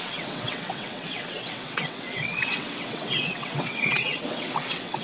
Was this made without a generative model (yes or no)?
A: no